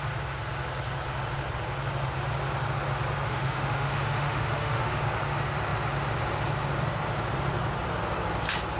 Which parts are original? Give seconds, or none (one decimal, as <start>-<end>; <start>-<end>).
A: 0.0-3.3; 5.0-8.8